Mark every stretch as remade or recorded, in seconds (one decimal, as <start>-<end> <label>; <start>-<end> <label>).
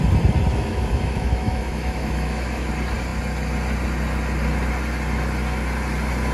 0.0-0.5 recorded; 0.5-2.7 remade; 2.7-6.3 recorded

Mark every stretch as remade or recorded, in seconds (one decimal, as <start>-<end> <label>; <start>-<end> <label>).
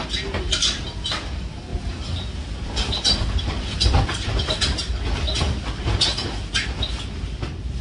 0.0-7.8 recorded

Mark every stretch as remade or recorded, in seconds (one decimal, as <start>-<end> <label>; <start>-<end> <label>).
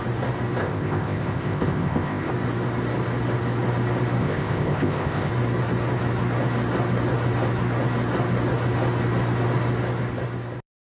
0.0-0.6 recorded; 0.6-2.3 remade; 2.3-4.2 recorded; 4.2-5.3 remade; 5.3-10.9 recorded